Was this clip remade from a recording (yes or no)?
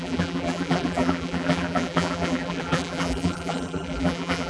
yes